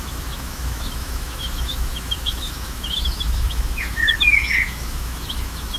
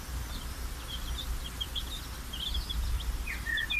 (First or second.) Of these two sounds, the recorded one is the second